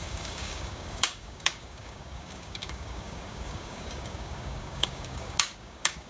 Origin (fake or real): fake